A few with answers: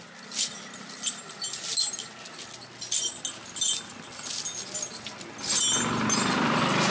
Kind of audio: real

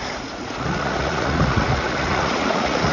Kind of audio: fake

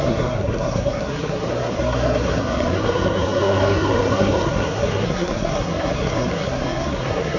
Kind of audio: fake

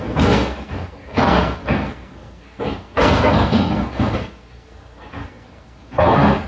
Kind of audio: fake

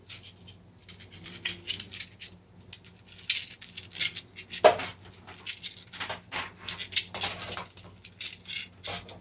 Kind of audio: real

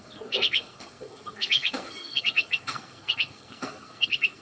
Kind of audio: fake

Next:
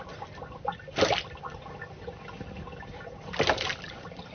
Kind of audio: real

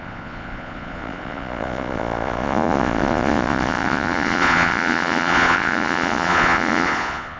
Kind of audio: fake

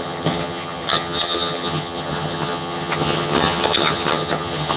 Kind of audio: fake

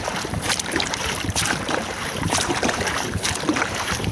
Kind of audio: fake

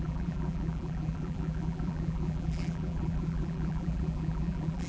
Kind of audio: fake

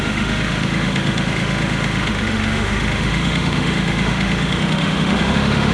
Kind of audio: fake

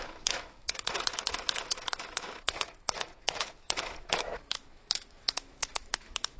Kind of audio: fake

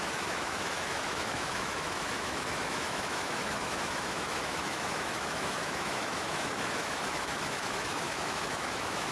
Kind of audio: fake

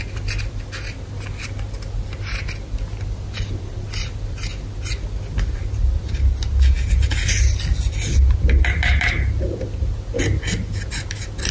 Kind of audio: real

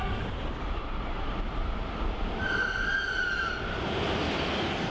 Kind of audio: real